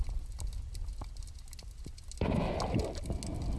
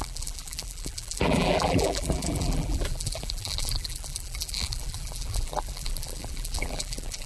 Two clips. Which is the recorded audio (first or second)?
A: first